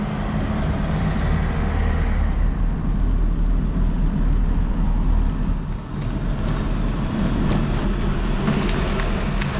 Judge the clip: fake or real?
real